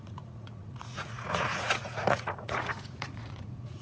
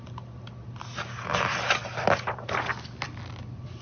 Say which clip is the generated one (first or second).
first